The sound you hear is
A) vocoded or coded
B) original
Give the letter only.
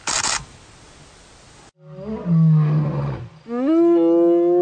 B